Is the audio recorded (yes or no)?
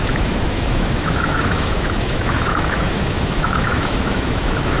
no